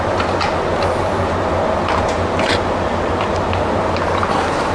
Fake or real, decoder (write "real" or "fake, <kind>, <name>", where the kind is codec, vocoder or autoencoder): real